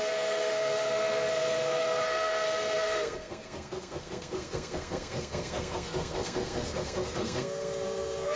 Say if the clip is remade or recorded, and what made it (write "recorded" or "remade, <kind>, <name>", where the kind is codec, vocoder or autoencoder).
remade, codec, SNAC